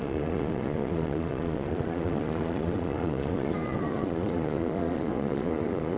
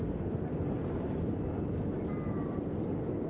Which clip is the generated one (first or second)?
first